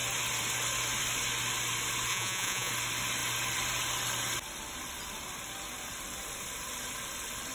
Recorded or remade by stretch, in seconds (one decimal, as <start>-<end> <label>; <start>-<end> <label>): 0.0-2.1 recorded; 2.1-2.7 remade; 2.7-7.5 recorded